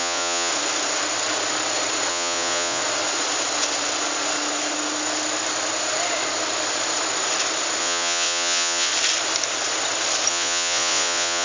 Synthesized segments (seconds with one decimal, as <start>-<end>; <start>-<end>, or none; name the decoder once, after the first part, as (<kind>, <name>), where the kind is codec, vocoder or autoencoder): 0.0-0.5 (vocoder, Vocos); 2.1-2.8; 7.8-8.9; 10.3-11.4